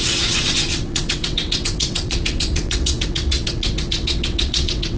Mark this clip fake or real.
fake